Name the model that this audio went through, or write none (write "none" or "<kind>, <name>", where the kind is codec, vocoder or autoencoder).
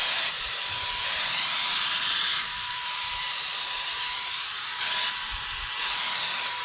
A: vocoder, BigVGAN v2